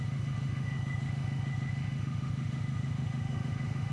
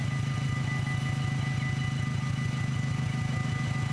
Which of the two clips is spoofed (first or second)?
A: first